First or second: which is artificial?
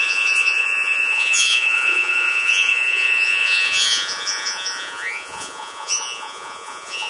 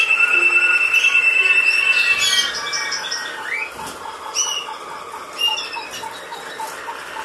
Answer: first